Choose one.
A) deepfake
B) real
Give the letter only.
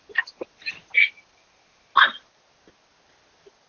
B